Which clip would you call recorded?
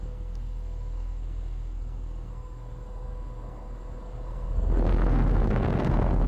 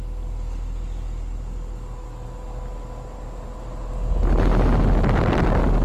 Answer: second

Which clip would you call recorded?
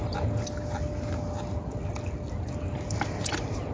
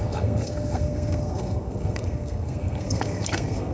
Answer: first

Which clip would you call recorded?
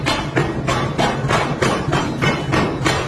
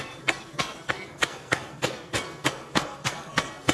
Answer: first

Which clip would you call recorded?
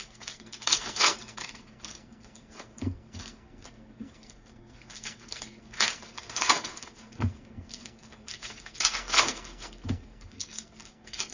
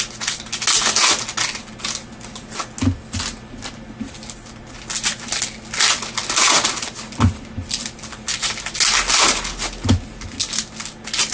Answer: second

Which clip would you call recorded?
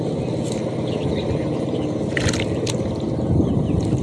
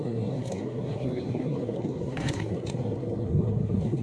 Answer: first